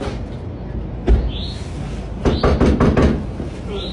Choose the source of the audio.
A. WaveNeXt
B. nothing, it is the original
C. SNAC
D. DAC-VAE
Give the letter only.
B